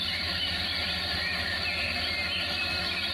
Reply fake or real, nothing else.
real